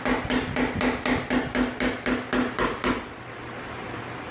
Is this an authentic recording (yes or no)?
yes